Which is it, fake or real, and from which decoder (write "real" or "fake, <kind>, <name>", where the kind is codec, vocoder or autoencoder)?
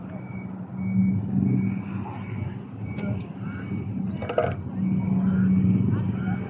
real